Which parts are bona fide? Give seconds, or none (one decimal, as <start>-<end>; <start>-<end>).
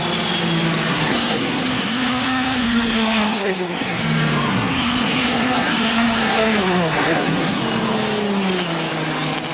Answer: 0.0-0.9; 4.0-4.5; 7.6-9.5